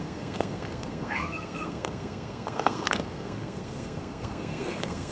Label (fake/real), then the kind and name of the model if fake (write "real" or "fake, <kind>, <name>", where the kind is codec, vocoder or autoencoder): fake, codec, SNAC